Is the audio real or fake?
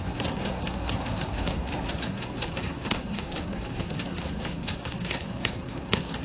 fake